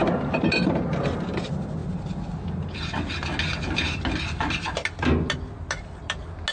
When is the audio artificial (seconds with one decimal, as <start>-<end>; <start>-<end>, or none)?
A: none